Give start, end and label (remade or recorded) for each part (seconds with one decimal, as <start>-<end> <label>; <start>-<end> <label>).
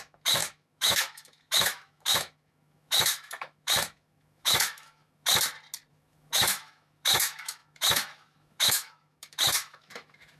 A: 0.0-5.3 remade; 5.3-5.9 recorded; 5.9-10.4 remade